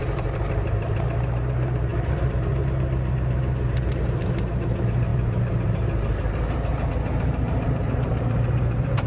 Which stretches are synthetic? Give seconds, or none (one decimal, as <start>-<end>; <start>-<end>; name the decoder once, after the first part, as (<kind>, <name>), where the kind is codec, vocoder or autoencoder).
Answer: 0.0-9.1 (vocoder, BigVGAN v2)